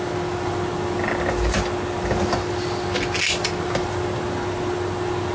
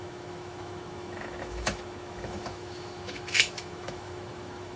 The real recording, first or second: first